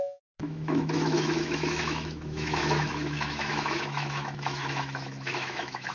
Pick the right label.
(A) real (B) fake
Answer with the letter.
B